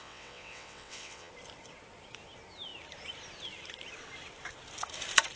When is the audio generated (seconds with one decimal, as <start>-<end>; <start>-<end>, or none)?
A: 0.0-1.3